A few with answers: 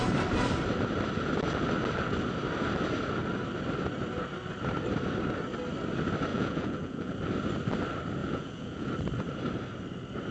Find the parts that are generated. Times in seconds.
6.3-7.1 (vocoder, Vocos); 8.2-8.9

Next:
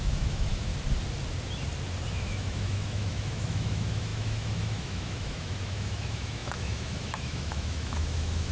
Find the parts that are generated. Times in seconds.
0.0-0.7 (autoencoder, DAC-VAE); 2.1-8.5

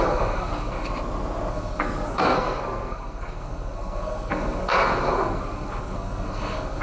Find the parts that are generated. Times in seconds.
0.0-0.9 (codec, SNAC); 1.5-6.8

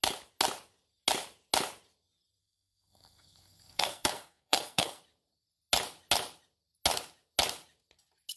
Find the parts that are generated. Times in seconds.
2.4-5.0 (codec, SNAC)

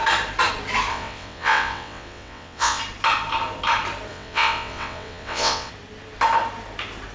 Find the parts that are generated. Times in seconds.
0.9-2.8 (vocoder, WaveNeXt); 4.1-5.7

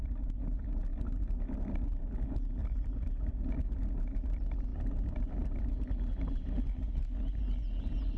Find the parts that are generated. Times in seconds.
0.9-1.4 (vocoder, BigVGAN v2); 2.6-3.3; 4.7-5.8